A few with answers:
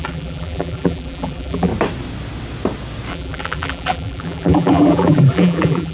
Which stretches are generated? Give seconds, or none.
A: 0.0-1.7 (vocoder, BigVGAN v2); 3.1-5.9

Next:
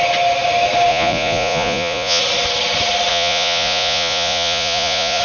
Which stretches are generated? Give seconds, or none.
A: 0.9-2.2 (vocoder, Vocos); 3.1-5.2

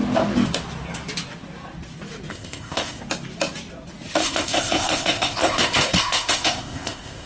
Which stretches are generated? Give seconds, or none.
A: 2.3-3.0 (codec, ZipCodec); 4.2-7.3

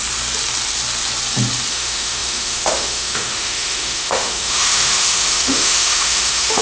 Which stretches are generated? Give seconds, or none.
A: 1.7-6.6 (autoencoder, DAC-VAE)

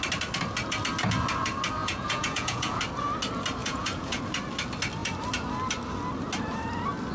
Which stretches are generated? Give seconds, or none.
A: 1.8-2.8 (vocoder, Vocos); 3.6-4.2

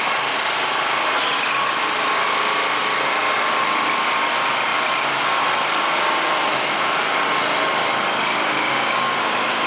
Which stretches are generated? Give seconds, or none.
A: 2.8-3.6 (vocoder, BigVGAN v2); 4.7-8.2

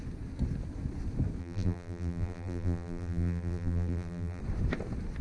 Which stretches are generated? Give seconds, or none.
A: 1.4-4.4 (vocoder, BigVGAN v2)